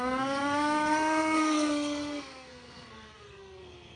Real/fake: fake